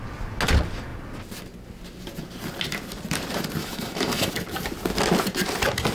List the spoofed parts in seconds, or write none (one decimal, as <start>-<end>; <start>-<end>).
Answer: 3.6-4.3